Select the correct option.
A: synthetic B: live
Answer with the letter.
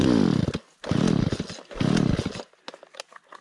B